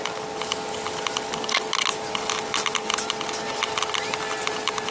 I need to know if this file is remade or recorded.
recorded